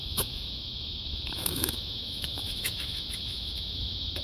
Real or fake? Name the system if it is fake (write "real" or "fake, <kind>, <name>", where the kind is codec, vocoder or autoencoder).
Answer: fake, autoencoder, DAC-VAE